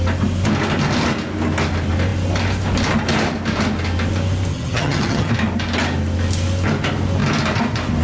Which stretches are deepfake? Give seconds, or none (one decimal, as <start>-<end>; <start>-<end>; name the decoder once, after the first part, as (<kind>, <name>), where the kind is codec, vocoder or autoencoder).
4.5-5.3 (vocoder, HiFi-GAN)